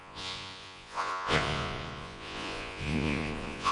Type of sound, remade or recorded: remade